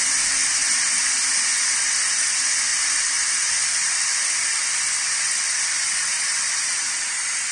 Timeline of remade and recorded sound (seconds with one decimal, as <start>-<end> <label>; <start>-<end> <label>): 0.0-2.7 recorded; 2.7-3.9 remade; 3.9-6.0 recorded; 6.0-7.1 remade; 7.1-7.5 recorded